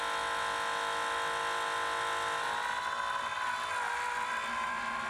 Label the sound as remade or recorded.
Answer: recorded